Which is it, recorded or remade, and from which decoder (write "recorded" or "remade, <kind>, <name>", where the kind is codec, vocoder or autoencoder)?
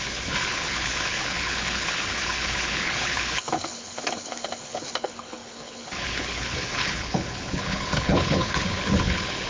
remade, codec, HILCodec